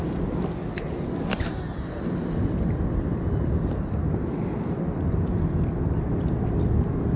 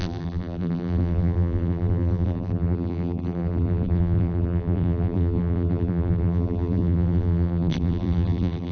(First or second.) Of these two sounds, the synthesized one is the second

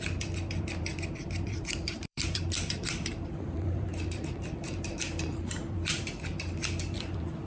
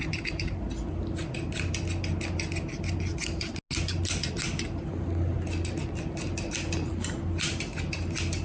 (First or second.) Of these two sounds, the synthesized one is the first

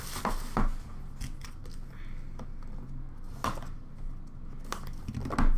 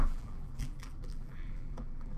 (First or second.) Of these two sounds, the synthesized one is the second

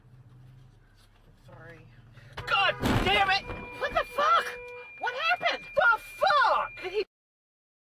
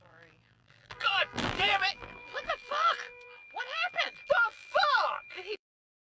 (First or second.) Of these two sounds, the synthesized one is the second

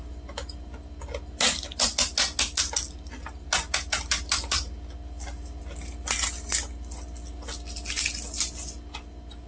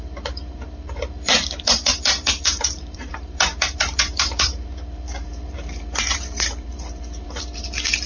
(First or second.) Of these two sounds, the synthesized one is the second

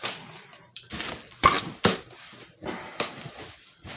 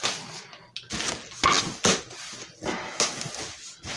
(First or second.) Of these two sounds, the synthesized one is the first